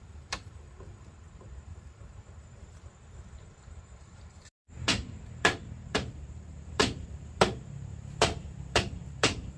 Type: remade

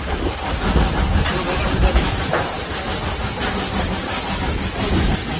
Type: recorded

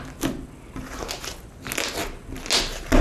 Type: recorded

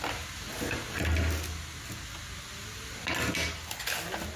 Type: recorded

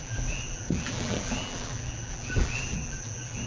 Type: remade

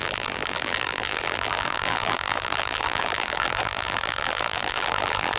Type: remade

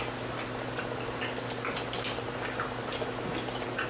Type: recorded